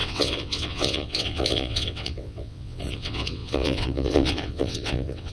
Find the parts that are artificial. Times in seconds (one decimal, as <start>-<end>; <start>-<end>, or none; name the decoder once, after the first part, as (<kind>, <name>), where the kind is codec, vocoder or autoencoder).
0.0-5.3 (vocoder, WaveNeXt)